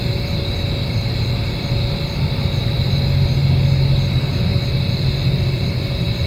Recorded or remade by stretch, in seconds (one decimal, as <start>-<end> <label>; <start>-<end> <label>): 0.0-6.3 recorded